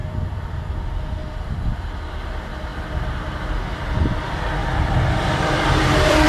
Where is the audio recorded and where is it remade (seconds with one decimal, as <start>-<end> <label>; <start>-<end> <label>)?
0.0-0.6 remade; 0.6-1.2 recorded; 1.2-2.1 remade; 2.1-4.6 recorded; 4.6-6.3 remade

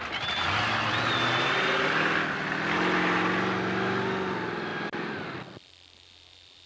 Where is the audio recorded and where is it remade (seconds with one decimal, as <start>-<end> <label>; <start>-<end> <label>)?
0.0-4.7 recorded; 4.7-5.7 remade; 5.7-6.7 recorded

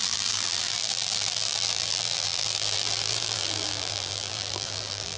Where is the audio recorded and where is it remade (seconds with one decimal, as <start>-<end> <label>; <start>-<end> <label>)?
0.0-5.2 remade